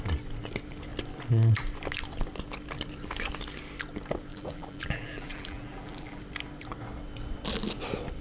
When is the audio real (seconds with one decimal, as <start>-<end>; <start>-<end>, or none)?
0.0-4.3; 6.2-8.2